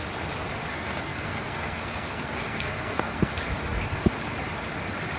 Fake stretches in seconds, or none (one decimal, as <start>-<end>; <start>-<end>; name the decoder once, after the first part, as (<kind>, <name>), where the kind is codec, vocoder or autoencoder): 0.7-3.3 (codec, SNAC)